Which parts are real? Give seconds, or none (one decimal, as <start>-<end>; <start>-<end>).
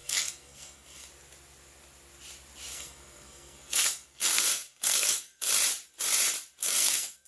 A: 1.1-2.7; 5.5-6.6